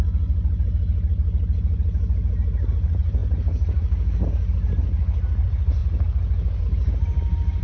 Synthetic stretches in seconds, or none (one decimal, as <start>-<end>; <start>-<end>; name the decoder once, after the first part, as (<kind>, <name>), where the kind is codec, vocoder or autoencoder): none

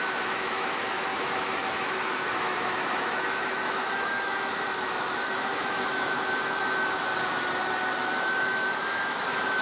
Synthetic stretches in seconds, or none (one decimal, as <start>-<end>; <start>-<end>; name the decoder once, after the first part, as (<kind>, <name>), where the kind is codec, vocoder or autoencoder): 0.0-7.1 (autoencoder, DAC-VAE); 8.1-9.6

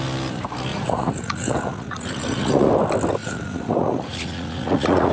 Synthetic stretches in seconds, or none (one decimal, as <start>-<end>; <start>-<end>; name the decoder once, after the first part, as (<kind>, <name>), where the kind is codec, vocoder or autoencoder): 0.7-2.7 (vocoder, Vocos); 3.2-5.1

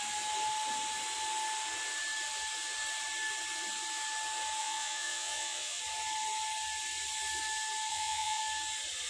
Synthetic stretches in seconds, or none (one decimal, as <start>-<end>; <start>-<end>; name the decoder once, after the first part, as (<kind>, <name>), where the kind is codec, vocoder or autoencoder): 4.6-5.8 (vocoder, Vocos); 7.9-8.4

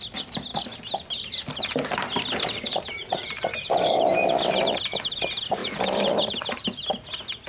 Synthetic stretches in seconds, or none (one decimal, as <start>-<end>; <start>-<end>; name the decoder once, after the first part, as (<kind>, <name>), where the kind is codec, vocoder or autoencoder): 2.7-4.1 (vocoder, BigVGAN v2); 5.6-6.4

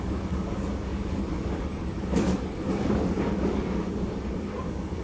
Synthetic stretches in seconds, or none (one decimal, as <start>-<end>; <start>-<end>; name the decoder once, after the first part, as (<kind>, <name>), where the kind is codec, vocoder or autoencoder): 0.0-5.0 (codec, DAC)

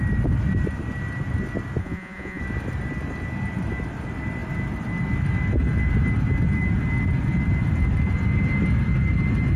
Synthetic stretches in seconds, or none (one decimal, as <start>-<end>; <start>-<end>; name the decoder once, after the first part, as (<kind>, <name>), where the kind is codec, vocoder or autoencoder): 1.8-2.4 (vocoder, Vocos)